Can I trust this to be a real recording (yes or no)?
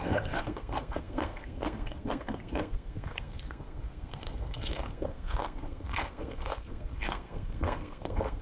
no